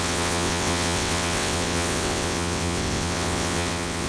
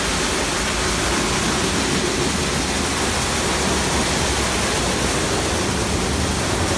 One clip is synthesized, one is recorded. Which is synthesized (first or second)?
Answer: first